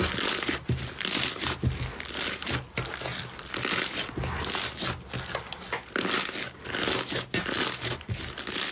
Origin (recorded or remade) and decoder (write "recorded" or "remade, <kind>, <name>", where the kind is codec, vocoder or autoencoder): recorded